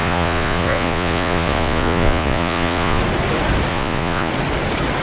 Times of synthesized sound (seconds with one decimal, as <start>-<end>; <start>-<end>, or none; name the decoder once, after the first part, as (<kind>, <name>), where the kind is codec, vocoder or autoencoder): 0.0-3.0 (vocoder, Vocos); 3.7-4.3